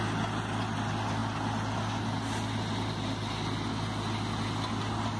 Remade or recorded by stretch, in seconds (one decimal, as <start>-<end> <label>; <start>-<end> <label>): 0.0-5.2 recorded